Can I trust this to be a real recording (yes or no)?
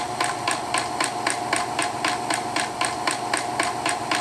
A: yes